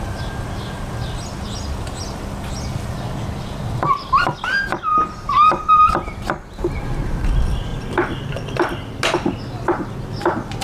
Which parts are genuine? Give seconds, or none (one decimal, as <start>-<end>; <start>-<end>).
0.0-10.6